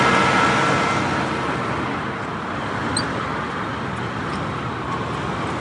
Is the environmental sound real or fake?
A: real